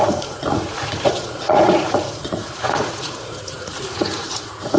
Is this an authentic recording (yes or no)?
no